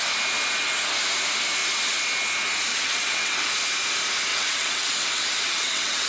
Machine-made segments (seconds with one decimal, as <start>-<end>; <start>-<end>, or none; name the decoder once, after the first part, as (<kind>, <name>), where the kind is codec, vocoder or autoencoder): 2.7-3.5 (vocoder, WaveNeXt); 4.3-6.1